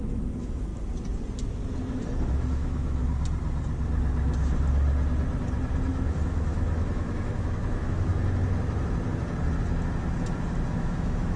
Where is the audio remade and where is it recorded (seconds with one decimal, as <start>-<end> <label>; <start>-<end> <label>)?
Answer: 0.0-0.7 remade; 0.7-2.2 recorded; 2.2-3.0 remade; 3.0-5.9 recorded; 5.9-8.1 remade; 8.1-10.7 recorded; 10.7-11.4 remade